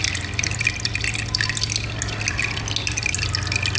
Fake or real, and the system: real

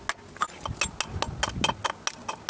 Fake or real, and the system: real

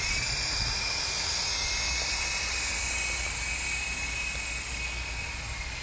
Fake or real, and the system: real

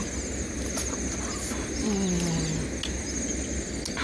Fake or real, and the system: real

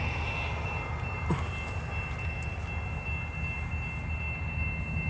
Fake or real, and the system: real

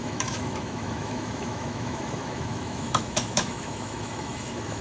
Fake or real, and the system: fake, autoencoder, DAC-VAE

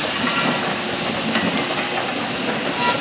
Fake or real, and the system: real